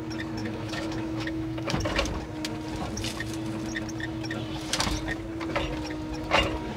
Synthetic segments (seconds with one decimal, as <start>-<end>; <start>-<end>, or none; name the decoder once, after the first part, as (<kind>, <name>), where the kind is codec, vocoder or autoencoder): 0.4-1.8 (autoencoder, DAC-VAE)